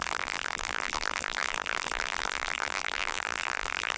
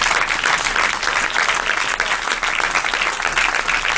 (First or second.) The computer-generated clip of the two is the first